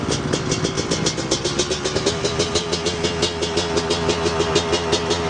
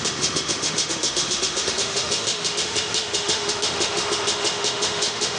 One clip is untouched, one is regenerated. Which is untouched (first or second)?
first